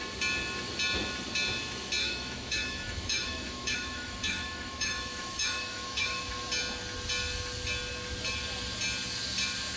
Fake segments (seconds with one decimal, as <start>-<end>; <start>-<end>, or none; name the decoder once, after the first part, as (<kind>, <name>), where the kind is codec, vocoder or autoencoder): 2.0-6.3 (autoencoder, DAC-VAE)